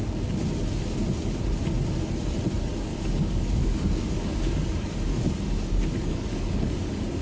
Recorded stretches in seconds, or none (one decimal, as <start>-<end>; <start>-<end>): 0.0-2.9